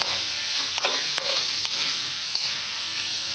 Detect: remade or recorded remade